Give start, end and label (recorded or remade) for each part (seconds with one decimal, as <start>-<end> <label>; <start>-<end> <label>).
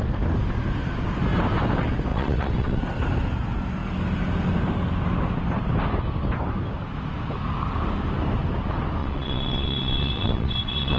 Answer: 0.0-2.1 recorded; 2.1-2.8 remade; 2.8-9.0 recorded; 9.0-11.0 remade